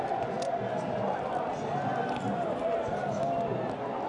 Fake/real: real